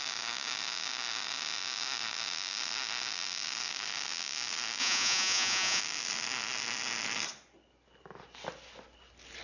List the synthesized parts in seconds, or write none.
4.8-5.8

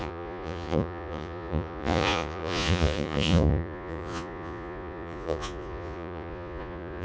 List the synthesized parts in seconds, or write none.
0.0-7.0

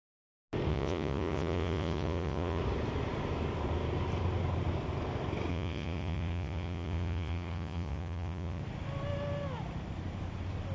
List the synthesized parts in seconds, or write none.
0.7-2.6; 5.5-8.6

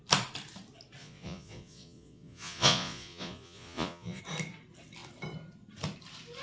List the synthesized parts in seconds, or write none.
1.0-4.2

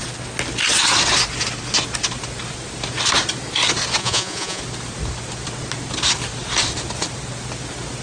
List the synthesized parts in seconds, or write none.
4.0-4.6